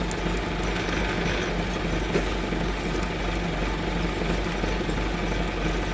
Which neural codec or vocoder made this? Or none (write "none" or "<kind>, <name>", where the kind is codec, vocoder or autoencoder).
none